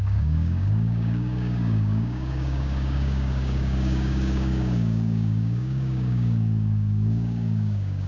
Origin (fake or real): fake